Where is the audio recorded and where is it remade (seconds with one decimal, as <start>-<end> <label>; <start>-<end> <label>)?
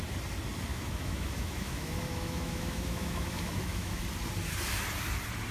0.0-0.7 recorded; 0.7-4.0 remade; 4.0-5.5 recorded